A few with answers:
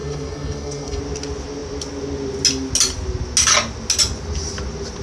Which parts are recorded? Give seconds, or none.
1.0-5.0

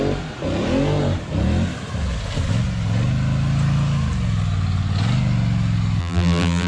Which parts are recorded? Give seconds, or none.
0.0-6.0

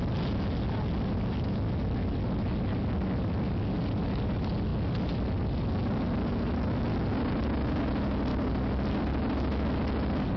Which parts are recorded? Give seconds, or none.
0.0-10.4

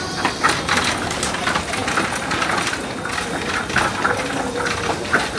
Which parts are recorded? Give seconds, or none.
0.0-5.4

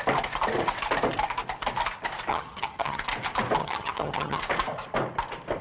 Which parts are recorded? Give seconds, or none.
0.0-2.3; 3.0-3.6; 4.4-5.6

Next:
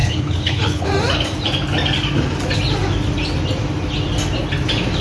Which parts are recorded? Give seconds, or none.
0.9-5.0

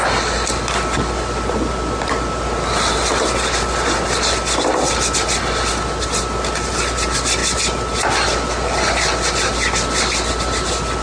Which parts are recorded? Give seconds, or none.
0.0-11.0